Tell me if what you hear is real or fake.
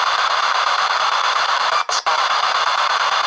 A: fake